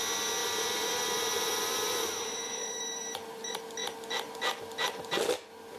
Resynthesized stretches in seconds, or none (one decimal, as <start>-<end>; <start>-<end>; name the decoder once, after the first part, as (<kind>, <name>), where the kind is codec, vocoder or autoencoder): 0.4-3.4 (vocoder, BigVGAN v2)